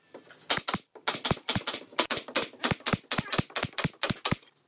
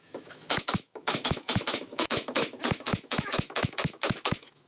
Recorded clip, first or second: first